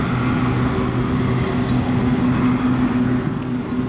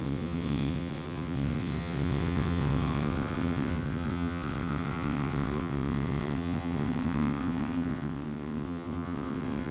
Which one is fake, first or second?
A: second